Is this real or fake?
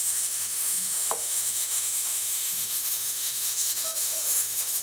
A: fake